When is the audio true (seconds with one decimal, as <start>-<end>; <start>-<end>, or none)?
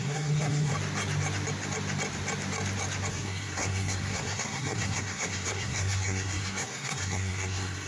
0.7-3.1